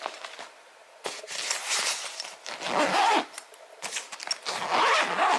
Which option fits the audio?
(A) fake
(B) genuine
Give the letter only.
B